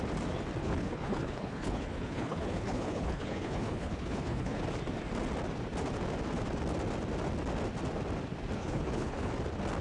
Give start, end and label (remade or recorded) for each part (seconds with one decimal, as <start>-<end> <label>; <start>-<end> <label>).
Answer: 0.0-0.6 recorded; 0.6-4.6 remade; 4.6-8.6 recorded; 8.6-9.3 remade; 9.3-9.8 recorded